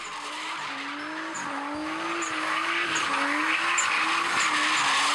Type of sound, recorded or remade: recorded